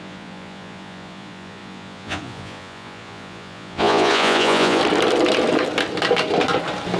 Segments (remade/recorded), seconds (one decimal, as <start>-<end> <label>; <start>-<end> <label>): 0.0-4.8 remade; 4.8-7.0 recorded